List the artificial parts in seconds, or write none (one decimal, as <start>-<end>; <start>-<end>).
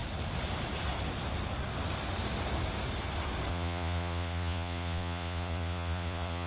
3.5-6.5